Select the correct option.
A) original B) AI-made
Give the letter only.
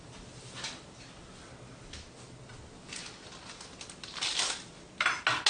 A